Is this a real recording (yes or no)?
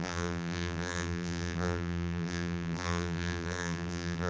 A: no